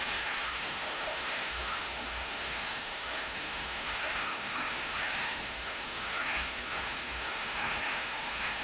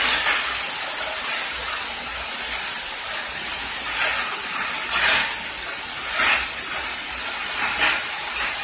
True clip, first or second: second